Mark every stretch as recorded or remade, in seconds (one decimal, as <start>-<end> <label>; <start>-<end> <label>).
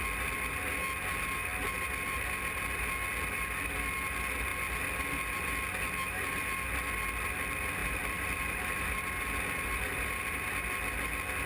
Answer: 0.0-7.8 recorded; 7.8-10.8 remade; 10.8-11.5 recorded